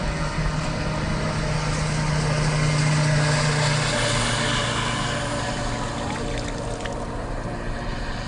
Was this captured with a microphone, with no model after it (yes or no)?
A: yes